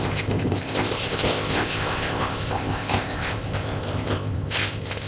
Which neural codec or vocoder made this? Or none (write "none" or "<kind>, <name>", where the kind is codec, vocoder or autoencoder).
codec, ZipCodec